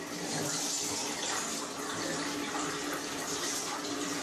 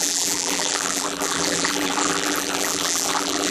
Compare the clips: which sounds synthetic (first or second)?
second